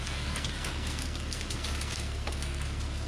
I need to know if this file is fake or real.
fake